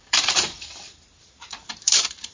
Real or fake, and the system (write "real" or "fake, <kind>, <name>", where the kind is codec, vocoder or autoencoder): fake, vocoder, BigVGAN v2